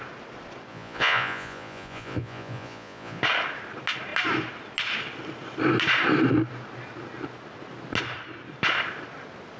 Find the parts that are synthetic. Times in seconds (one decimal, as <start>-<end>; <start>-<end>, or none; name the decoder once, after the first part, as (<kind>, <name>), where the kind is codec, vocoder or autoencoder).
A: 0.7-3.2 (vocoder, Vocos)

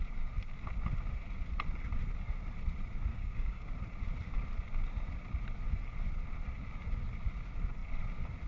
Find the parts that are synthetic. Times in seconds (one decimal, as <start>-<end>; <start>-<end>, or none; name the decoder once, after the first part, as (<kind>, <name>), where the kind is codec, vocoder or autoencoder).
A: 3.1-3.7 (codec, DAC)

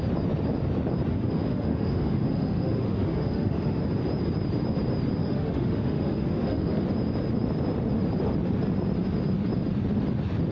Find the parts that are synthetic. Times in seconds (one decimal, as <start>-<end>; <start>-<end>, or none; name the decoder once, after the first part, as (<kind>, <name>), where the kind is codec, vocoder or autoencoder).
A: 1.1-3.8 (autoencoder, DAC-VAE); 5.2-6.8

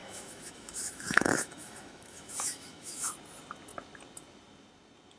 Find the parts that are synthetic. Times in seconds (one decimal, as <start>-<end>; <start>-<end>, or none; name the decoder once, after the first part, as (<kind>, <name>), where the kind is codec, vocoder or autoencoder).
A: 0.0-3.1 (autoencoder, DAC-VAE)

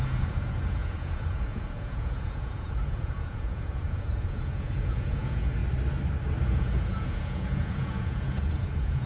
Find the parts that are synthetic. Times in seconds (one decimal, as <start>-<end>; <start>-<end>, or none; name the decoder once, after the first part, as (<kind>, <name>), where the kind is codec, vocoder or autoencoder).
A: 0.0-5.6 (vocoder, Vocos); 6.4-9.1

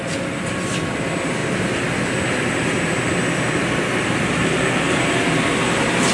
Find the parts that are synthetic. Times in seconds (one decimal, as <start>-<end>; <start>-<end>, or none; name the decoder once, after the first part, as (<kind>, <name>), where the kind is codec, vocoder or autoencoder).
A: none